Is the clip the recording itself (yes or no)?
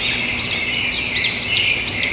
yes